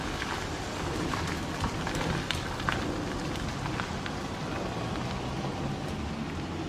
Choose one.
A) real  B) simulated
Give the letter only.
A